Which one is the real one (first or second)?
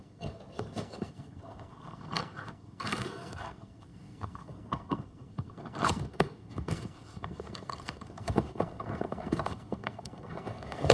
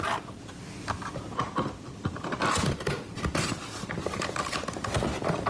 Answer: second